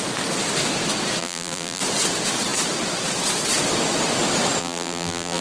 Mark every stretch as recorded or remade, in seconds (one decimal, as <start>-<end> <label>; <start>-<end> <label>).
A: 0.0-1.2 recorded; 1.2-1.8 remade; 1.8-4.6 recorded; 4.6-5.4 remade